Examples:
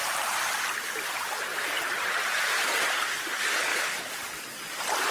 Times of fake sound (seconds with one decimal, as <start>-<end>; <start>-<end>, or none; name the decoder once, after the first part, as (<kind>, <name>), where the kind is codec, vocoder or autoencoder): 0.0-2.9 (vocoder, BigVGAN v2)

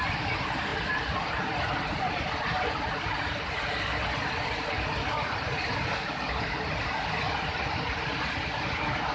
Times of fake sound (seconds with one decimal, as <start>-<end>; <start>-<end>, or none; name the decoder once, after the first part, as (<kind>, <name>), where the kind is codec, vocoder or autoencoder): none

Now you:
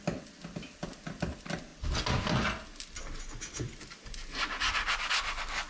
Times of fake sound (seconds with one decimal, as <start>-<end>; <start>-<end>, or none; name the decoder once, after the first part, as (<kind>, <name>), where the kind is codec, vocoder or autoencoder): none

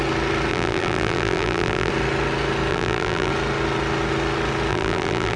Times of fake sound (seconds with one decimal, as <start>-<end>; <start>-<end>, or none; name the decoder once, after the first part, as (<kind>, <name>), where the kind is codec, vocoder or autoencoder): 0.5-1.9 (vocoder, BigVGAN v2); 2.7-3.3; 4.7-5.4